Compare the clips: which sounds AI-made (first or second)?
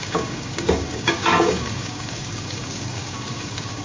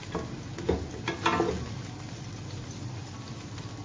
first